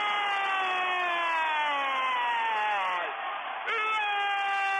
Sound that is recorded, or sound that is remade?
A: recorded